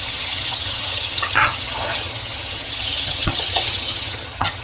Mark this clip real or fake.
fake